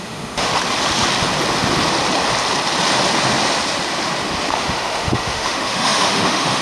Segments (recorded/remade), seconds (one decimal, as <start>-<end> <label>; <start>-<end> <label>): 0.0-0.5 remade; 0.5-4.5 recorded; 4.5-6.6 remade